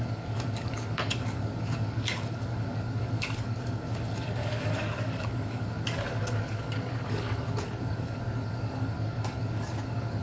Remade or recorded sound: remade